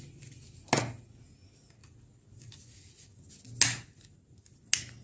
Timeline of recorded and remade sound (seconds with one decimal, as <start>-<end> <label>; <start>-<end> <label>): 0.0-5.0 recorded